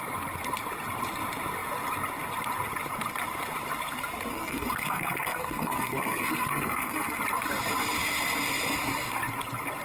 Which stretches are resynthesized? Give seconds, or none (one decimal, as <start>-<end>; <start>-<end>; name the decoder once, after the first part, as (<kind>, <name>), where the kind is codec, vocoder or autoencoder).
4.3-7.2 (codec, SNAC)